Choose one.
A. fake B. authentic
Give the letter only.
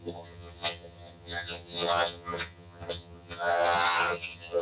A